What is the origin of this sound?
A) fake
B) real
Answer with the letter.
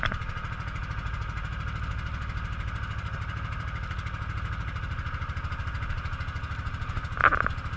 B